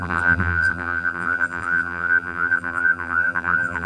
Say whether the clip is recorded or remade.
remade